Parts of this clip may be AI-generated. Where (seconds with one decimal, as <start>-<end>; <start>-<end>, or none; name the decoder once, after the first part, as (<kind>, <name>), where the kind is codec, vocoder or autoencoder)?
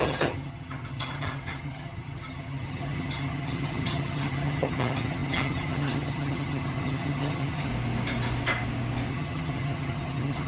0.0-7.7 (vocoder, HiFi-GAN); 9.1-10.5